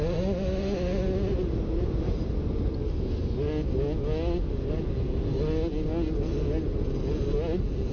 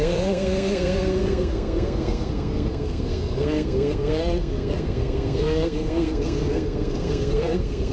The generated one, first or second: second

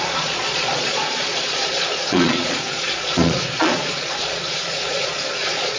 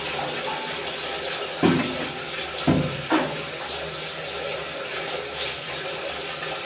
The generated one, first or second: first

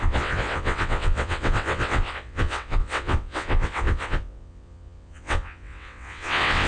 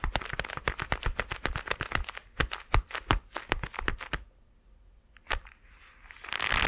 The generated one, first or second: first